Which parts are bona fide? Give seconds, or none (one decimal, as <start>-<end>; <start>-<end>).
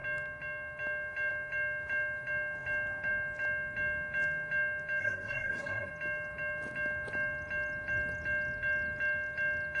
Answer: 0.0-5.0; 5.9-9.8